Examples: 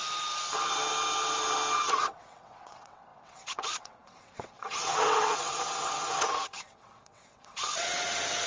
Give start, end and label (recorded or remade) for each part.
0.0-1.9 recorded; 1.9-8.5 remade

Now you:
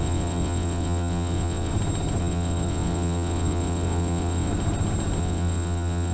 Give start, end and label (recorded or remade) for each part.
0.0-1.7 remade; 1.7-2.2 recorded; 2.2-4.5 remade; 4.5-5.2 recorded; 5.2-6.1 remade

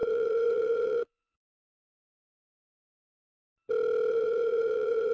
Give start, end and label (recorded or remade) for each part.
0.0-1.5 remade; 1.5-4.1 recorded; 4.1-5.1 remade